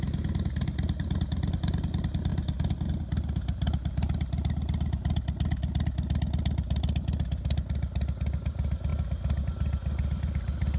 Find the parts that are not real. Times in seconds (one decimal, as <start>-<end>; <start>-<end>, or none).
none